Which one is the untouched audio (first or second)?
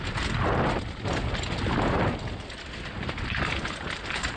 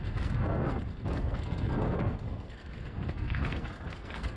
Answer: first